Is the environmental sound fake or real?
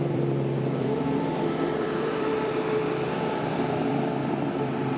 fake